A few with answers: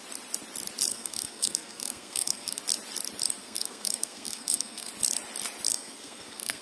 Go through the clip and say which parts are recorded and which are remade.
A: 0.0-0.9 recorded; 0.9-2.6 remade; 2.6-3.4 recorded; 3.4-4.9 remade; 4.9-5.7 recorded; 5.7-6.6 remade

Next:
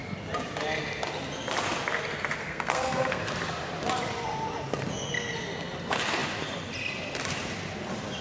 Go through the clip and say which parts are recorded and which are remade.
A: 0.0-2.4 recorded; 2.4-3.2 remade; 3.2-8.2 recorded

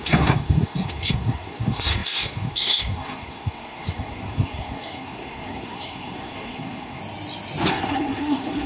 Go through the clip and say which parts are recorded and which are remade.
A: 0.0-7.0 remade; 7.0-7.7 recorded; 7.7-8.7 remade

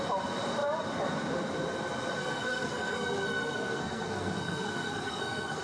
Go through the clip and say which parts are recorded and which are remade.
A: 0.0-2.2 recorded; 2.2-5.6 remade

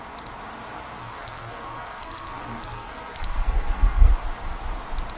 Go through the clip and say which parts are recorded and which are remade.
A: 0.0-1.0 recorded; 1.0-4.1 remade; 4.1-5.2 recorded

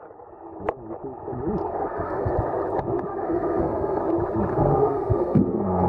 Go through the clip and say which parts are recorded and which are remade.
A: 0.0-1.7 recorded; 1.7-2.3 remade; 2.3-3.1 recorded; 3.1-4.0 remade; 4.0-4.5 recorded; 4.5-5.9 remade